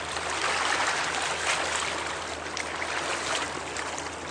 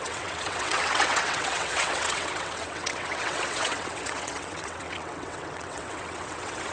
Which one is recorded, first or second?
first